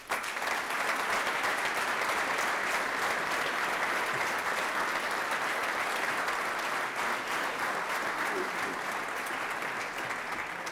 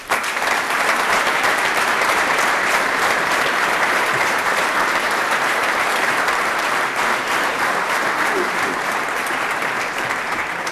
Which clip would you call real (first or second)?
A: first